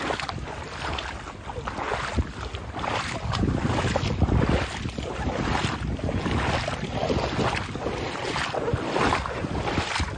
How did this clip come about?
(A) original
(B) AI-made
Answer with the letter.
A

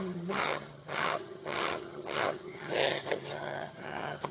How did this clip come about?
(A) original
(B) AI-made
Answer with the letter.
B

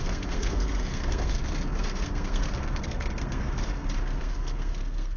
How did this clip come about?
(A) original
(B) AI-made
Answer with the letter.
B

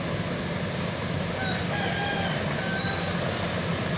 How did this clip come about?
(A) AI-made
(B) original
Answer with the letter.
B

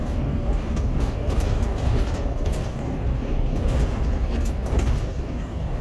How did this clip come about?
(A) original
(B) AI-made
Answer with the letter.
B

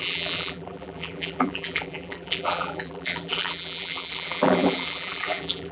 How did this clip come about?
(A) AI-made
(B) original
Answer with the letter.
A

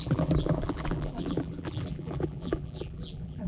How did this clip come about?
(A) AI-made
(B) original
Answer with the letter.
A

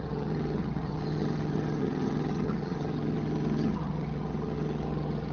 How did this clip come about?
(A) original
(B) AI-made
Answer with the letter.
B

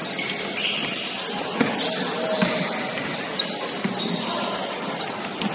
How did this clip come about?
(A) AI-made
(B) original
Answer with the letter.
B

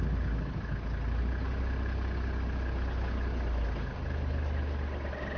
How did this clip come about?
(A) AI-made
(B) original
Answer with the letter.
B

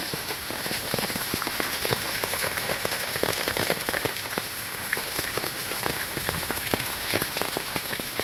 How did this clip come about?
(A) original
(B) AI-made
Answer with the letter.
B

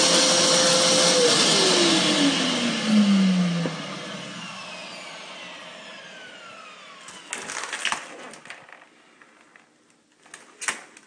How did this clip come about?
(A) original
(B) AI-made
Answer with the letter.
A